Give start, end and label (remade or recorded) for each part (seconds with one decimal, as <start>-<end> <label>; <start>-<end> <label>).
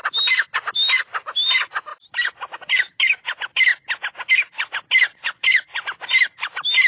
0.0-1.9 recorded; 1.9-2.9 remade; 2.9-5.2 recorded; 5.2-5.8 remade; 5.8-6.9 recorded